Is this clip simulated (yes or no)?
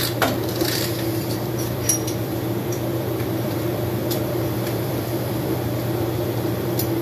yes